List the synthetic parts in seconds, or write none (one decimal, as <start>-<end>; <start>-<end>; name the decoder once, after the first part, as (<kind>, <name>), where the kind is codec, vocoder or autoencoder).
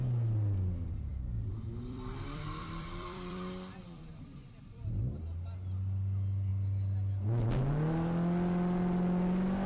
1.1-4.0 (vocoder, BigVGAN v2); 4.4-5.2